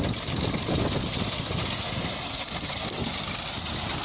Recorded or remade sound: recorded